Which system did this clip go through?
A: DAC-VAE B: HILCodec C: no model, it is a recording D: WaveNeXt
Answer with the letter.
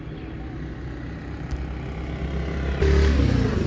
C